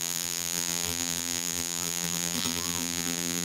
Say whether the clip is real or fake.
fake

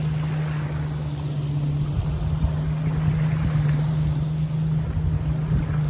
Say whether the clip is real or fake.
real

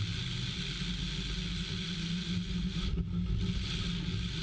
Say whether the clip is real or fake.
real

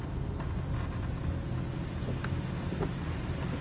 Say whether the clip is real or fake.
real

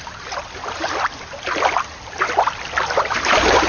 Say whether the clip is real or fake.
real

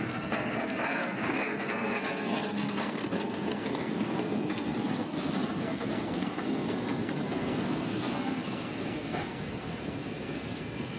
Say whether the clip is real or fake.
fake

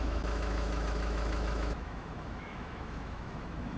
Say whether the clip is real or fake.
fake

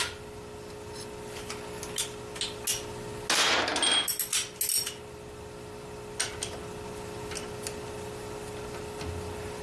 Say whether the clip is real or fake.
real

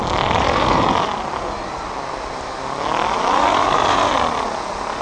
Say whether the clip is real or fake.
real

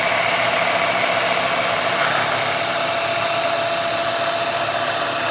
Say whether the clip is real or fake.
real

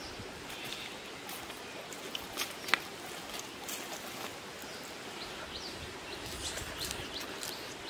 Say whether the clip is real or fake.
real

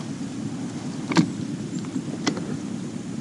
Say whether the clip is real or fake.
real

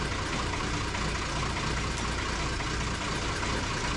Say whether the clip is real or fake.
real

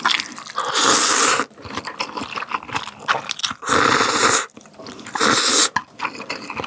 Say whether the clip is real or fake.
real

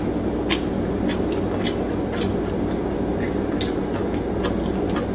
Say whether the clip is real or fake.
real